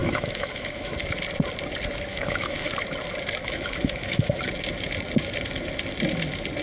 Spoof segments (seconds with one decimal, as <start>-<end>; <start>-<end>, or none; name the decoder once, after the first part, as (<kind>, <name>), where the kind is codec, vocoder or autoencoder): 0.0-0.9 (autoencoder, DAC-VAE); 2.1-2.7; 3.4-4.5